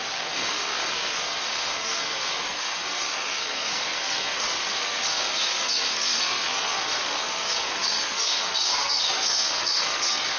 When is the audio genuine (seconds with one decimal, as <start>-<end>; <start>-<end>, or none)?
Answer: none